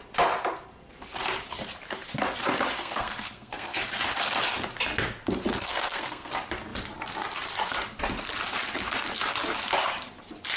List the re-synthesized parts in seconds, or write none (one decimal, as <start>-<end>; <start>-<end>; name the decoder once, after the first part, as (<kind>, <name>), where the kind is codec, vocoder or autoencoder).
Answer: 2.8-3.8 (codec, SNAC); 5.5-6.3